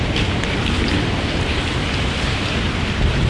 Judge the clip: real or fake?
real